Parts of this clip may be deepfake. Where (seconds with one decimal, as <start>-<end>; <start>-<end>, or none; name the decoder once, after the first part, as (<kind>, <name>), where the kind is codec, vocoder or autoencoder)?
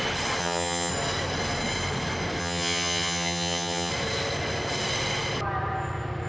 0.4-0.9 (vocoder, HiFi-GAN); 2.4-3.9